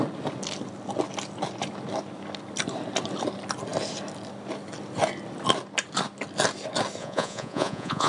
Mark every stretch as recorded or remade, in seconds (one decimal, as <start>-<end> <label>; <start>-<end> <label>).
0.0-7.0 recorded; 7.0-8.1 remade